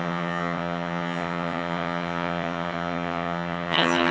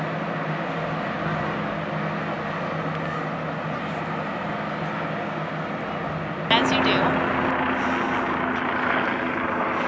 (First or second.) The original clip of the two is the second